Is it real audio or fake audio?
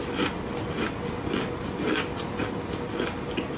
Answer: real